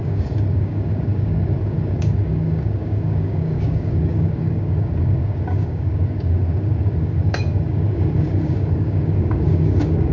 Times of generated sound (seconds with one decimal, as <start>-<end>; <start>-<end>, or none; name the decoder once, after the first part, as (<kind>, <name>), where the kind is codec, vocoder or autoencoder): 0.0-10.1 (codec, DAC)

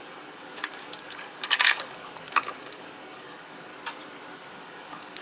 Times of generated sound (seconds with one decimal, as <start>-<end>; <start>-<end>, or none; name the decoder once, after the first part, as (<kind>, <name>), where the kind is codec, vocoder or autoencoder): 0.0-3.7 (codec, DAC); 4.5-5.2